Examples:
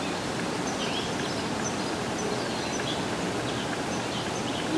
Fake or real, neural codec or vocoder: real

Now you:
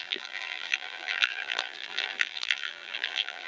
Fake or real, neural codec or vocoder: fake, vocoder, BigVGAN v2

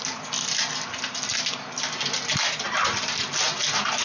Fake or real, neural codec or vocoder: real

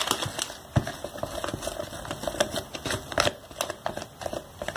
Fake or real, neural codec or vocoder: real